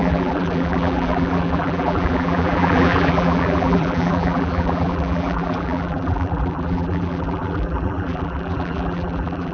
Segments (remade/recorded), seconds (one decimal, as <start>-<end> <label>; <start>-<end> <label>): 0.0-9.5 remade